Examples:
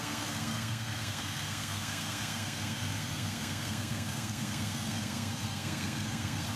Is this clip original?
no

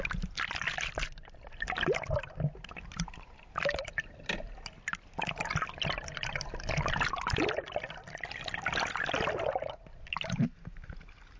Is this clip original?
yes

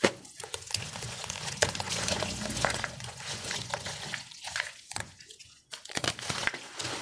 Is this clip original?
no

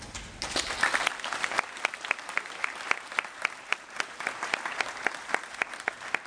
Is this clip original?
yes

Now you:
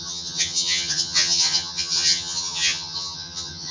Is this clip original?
no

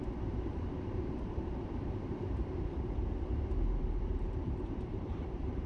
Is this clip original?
no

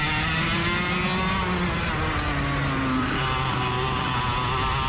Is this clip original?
yes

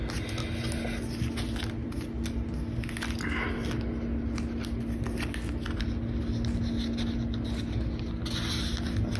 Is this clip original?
yes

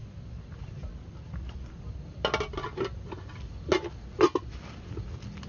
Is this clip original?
yes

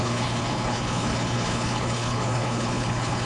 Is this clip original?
no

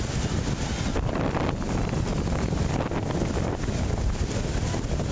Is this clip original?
yes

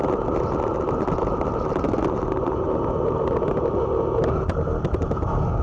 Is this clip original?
yes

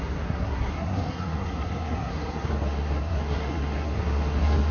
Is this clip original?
no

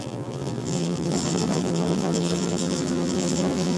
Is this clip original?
no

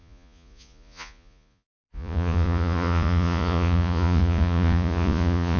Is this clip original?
no